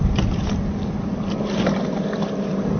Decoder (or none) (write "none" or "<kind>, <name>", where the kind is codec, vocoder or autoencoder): none